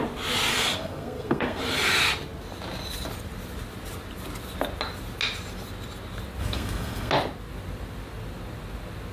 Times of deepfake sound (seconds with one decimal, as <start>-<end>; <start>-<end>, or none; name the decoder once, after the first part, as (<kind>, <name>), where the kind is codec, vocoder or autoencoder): 0.5-1.6 (codec, SNAC); 6.4-7.1